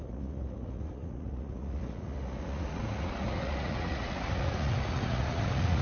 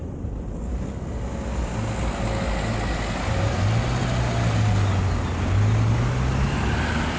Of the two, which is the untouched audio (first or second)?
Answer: second